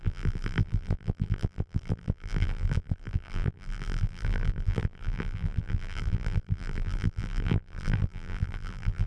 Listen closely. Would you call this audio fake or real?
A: fake